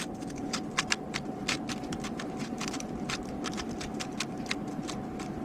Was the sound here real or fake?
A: real